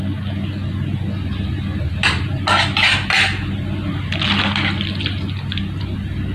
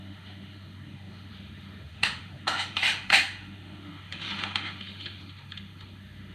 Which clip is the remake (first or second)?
second